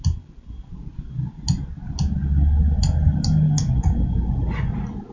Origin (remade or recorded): recorded